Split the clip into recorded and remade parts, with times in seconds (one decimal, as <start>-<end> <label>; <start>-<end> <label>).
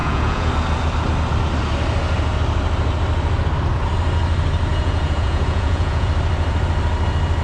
0.0-0.5 remade; 0.5-4.7 recorded; 4.7-6.1 remade; 6.1-7.4 recorded